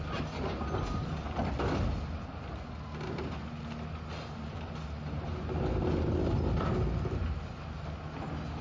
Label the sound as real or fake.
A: real